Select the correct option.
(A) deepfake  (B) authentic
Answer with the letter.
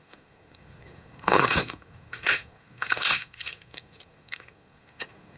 A